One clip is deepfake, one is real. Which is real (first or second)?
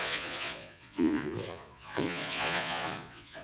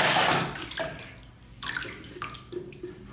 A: second